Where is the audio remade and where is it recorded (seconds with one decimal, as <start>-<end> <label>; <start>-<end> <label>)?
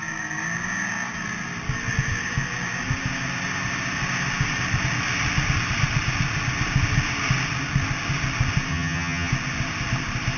0.0-8.7 recorded; 8.7-9.3 remade; 9.3-10.4 recorded